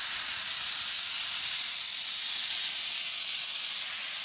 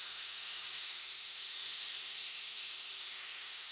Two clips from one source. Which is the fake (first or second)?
second